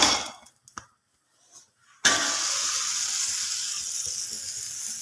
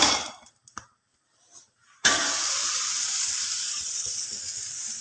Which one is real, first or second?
first